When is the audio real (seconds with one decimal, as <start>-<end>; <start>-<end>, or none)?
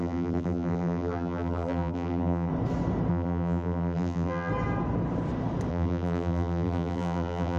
2.5-3.1; 4.5-5.7